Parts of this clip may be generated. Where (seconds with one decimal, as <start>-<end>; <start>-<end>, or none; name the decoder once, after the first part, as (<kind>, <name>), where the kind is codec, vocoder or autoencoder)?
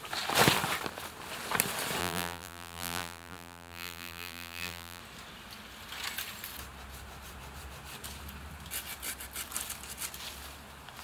2.0-5.0 (vocoder, BigVGAN v2)